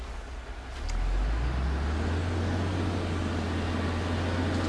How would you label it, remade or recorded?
recorded